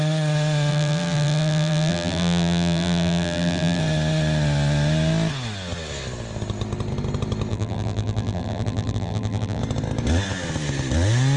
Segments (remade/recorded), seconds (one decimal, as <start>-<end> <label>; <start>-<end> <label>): 0.0-0.7 recorded; 0.7-3.8 remade; 3.8-7.5 recorded; 7.5-9.6 remade; 9.6-11.4 recorded